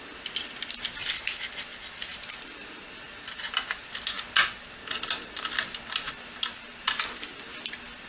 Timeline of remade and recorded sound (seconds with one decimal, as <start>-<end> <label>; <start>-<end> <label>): 0.0-8.1 recorded